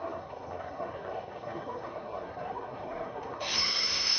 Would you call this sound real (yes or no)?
no